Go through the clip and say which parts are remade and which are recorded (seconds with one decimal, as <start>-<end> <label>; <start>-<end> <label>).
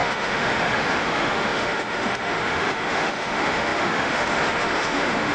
0.0-5.3 remade